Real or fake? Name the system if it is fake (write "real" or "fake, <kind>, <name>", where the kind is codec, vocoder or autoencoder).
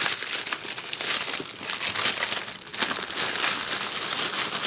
real